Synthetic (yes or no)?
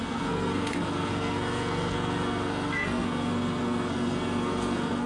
yes